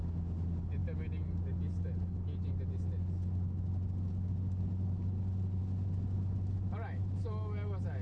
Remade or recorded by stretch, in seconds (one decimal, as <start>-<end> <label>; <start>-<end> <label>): 0.0-8.0 recorded